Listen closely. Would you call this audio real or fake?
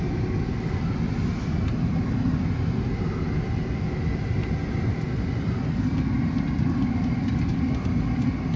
real